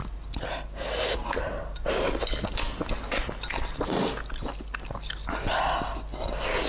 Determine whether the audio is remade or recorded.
recorded